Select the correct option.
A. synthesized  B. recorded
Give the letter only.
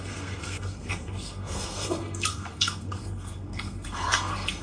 A